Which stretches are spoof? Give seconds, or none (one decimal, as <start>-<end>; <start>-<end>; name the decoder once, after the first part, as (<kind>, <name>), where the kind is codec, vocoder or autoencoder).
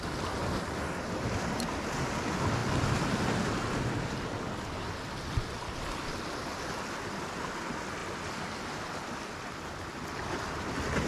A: none